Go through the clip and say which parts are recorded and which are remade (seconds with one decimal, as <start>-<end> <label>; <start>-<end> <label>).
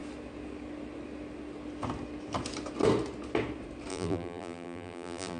0.0-3.9 recorded; 3.9-5.4 remade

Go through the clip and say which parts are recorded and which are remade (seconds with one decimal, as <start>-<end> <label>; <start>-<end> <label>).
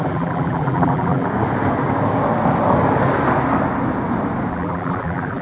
0.0-1.3 remade; 1.3-4.5 recorded; 4.5-5.4 remade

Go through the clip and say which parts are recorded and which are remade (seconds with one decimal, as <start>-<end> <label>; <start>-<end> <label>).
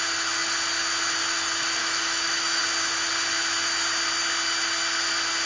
0.0-1.8 recorded; 1.8-2.6 remade; 2.6-5.5 recorded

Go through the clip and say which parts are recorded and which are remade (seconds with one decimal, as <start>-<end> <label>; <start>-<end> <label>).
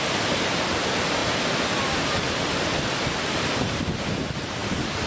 0.0-1.2 recorded; 1.2-3.9 remade; 3.9-5.1 recorded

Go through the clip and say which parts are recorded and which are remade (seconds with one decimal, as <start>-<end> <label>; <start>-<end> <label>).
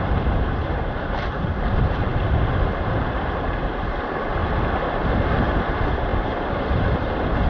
0.0-4.4 remade; 4.4-4.9 recorded; 4.9-7.5 remade